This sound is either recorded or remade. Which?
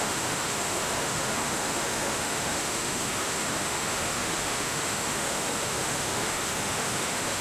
remade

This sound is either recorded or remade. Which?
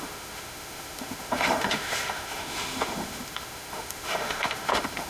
remade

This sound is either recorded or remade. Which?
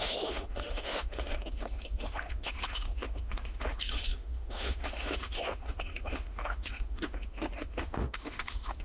remade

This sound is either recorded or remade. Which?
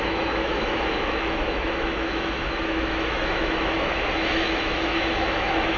remade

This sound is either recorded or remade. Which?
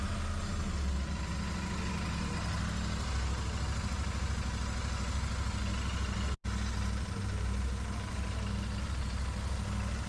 recorded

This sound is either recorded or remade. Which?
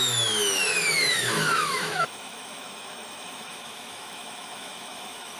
remade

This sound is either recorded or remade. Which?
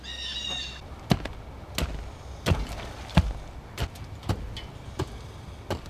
recorded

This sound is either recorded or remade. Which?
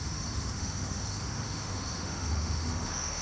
remade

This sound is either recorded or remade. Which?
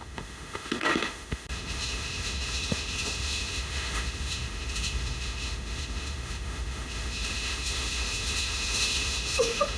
remade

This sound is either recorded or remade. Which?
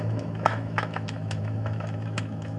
remade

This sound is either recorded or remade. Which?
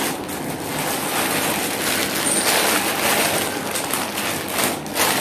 recorded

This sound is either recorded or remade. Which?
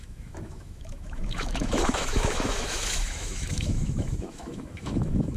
remade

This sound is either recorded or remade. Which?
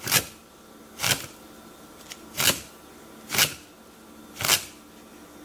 recorded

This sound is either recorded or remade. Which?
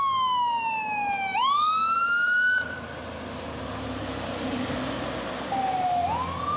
recorded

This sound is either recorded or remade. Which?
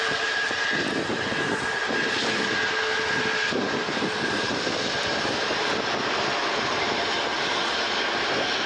recorded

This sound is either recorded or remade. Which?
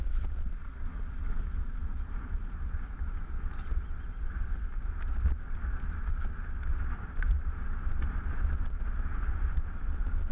recorded